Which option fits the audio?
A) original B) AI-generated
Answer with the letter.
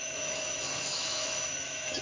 B